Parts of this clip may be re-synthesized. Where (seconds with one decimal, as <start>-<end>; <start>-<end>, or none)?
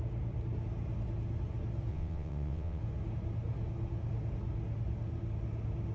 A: 1.9-2.8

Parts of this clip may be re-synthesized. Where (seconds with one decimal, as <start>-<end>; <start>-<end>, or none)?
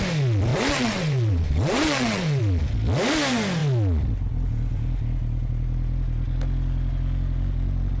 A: 0.5-2.4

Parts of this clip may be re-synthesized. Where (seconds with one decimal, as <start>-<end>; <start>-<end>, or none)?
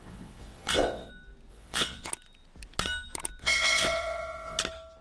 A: 0.0-1.1; 1.5-2.1; 3.4-4.6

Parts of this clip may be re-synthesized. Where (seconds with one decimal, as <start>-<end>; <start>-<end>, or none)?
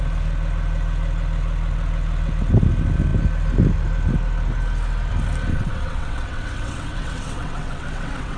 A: 5.5-8.4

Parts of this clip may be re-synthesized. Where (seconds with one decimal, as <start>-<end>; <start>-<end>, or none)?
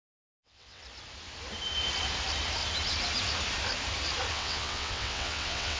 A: 0.0-0.8; 4.3-5.8